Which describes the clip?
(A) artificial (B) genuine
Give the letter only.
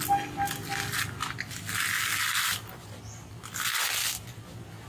B